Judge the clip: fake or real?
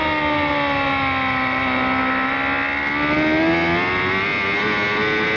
real